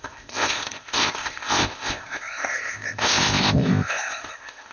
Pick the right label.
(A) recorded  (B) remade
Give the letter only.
B